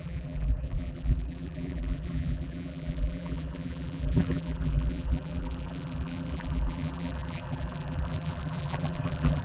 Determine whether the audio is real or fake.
fake